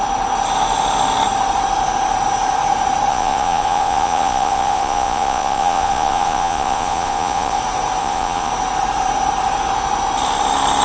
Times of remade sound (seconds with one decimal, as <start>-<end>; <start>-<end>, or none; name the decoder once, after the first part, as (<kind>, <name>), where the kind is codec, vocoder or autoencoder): 3.1-7.6 (vocoder, Vocos); 8.0-8.5

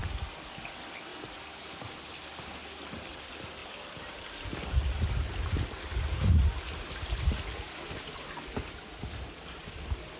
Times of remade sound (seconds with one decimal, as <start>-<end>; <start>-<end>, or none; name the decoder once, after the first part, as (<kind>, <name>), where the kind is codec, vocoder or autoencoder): none

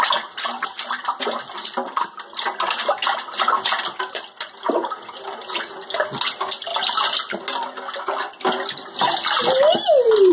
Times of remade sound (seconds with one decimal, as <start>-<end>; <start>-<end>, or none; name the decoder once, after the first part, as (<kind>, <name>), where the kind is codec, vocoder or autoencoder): none

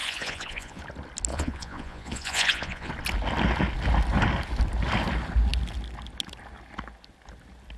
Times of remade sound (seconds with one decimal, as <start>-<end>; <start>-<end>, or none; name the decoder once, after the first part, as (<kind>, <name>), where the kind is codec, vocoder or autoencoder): 0.0-0.8 (vocoder, Vocos); 1.3-2.9

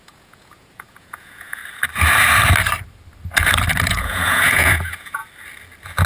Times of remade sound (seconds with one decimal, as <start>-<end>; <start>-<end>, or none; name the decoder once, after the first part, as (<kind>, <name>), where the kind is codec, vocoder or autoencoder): 0.0-1.6 (vocoder, Vocos); 3.9-5.2

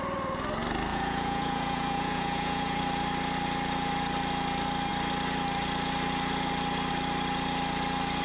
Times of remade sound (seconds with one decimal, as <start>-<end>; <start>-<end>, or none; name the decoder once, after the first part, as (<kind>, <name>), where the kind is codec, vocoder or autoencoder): 0.9-2.8 (vocoder, Vocos)

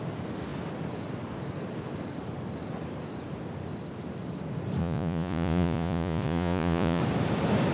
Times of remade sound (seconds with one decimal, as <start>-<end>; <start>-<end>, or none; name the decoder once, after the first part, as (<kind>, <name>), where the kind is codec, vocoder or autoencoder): 4.8-7.0 (vocoder, Vocos)

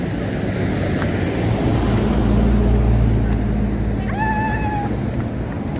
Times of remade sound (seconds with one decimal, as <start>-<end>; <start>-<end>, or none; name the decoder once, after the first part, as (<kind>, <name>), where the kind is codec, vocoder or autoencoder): none